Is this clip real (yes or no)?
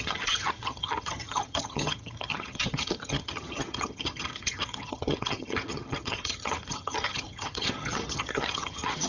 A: no